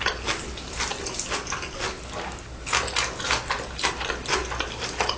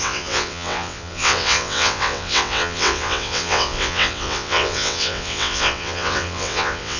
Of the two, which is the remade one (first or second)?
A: second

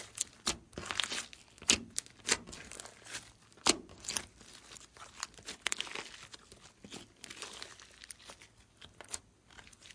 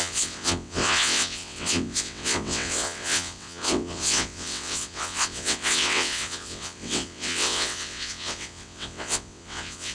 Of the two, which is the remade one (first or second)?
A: second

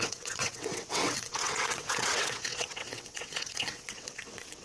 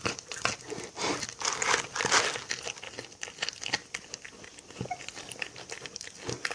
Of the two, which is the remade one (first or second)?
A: first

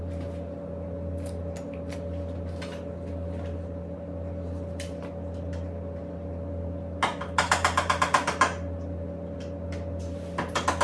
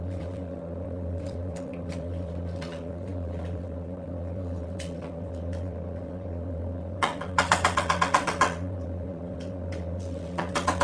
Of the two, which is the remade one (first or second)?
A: second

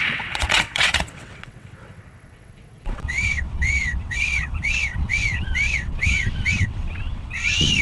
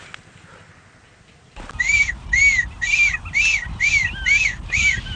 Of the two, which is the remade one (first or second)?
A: first